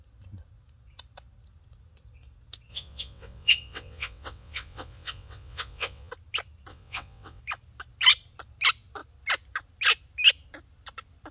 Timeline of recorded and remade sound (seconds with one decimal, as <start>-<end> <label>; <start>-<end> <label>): 0.0-2.7 recorded; 2.7-6.1 remade; 6.1-6.7 recorded; 6.7-7.4 remade; 7.4-11.3 recorded